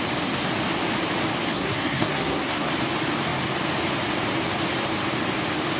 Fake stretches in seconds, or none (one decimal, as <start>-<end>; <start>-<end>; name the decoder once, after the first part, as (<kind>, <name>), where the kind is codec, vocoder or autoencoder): 1.5-2.7 (codec, SNAC)